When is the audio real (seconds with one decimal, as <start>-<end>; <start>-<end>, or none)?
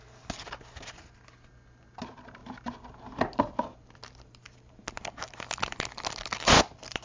0.0-7.0